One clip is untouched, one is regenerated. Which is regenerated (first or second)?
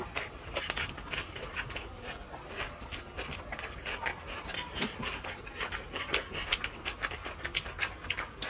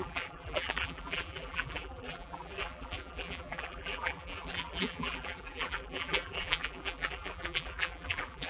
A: second